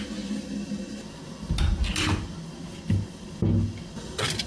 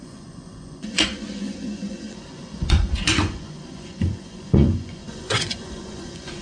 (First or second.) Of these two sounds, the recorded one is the first